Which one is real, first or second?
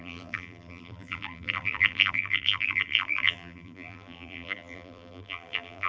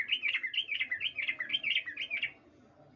second